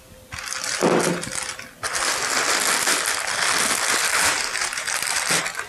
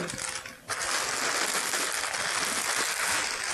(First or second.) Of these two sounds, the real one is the second